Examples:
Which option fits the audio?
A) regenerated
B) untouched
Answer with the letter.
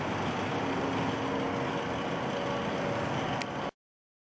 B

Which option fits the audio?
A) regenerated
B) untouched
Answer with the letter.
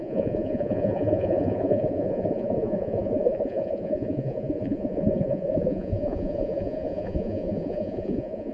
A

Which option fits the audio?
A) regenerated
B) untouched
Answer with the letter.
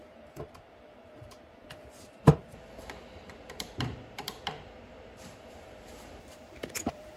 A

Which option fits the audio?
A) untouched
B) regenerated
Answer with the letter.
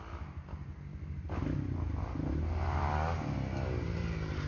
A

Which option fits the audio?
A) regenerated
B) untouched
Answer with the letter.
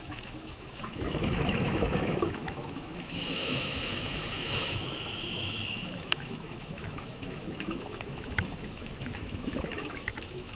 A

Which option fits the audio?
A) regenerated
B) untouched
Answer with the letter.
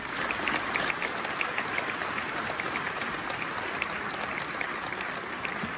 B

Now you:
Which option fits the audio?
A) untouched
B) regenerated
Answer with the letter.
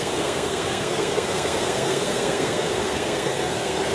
B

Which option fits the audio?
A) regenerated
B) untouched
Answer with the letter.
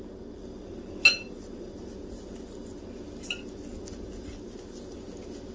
B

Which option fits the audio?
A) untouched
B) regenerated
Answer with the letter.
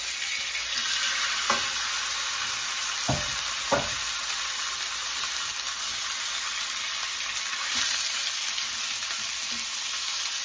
A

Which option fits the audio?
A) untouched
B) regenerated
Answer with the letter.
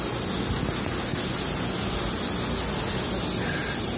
A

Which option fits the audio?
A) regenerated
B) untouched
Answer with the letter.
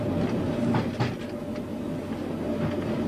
B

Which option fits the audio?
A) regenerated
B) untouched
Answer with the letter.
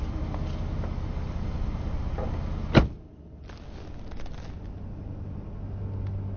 B